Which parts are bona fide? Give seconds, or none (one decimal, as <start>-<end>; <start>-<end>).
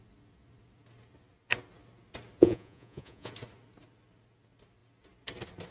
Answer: 0.0-2.4; 3.3-5.7